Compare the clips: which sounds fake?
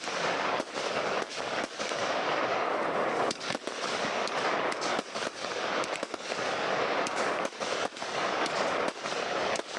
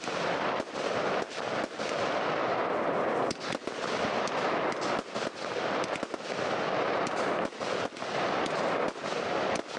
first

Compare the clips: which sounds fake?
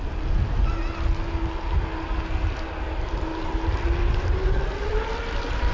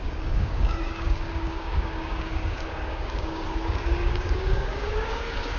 second